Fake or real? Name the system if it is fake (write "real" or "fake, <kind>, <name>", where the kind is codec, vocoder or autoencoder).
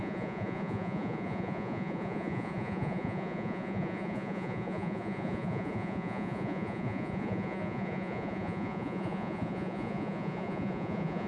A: fake, vocoder, Vocos